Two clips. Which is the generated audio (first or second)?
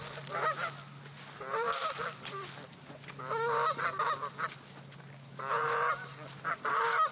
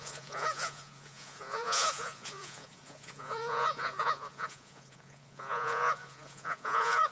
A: second